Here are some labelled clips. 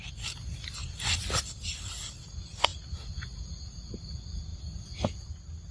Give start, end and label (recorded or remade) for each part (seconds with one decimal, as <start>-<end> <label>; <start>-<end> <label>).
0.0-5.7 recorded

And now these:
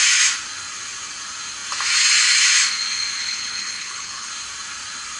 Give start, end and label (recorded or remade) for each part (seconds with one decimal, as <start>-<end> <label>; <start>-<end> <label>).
0.0-3.2 recorded; 3.2-4.3 remade; 4.3-5.2 recorded

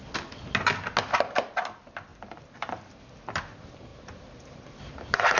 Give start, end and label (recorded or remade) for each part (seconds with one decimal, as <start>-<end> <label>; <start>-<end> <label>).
0.0-2.1 recorded; 2.1-3.0 remade; 3.0-3.9 recorded; 3.9-5.4 remade